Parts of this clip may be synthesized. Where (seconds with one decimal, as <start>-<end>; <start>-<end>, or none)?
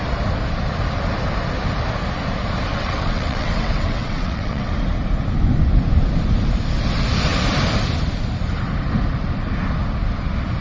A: 2.7-4.7